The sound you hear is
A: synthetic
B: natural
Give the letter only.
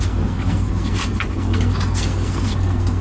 A